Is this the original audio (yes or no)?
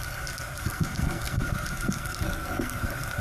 no